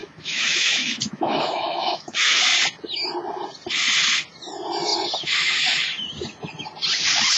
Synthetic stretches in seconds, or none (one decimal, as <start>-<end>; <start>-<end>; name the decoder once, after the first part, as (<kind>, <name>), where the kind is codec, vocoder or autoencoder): 0.0-2.4 (autoencoder, DAC-VAE)

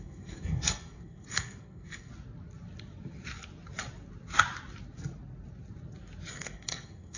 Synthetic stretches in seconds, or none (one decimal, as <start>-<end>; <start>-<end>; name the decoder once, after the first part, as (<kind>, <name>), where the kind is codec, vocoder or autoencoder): 0.0-2.1 (codec, SNAC); 6.3-7.2

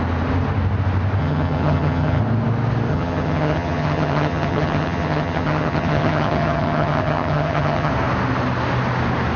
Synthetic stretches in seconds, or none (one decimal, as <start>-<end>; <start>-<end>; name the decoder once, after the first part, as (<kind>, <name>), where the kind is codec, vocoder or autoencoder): 1.2-2.2 (vocoder, HiFi-GAN); 2.9-7.9

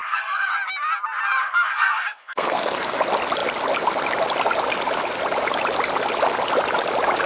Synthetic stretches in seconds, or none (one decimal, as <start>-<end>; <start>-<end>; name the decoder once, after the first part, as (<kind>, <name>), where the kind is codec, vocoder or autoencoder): 0.0-0.5 (codec, SNAC); 1.4-3.0

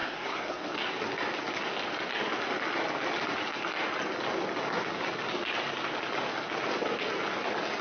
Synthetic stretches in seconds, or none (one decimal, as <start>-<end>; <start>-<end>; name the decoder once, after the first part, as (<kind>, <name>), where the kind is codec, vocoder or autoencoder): 0.0-0.6 (codec, SNAC)